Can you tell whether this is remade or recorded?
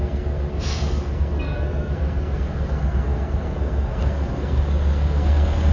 remade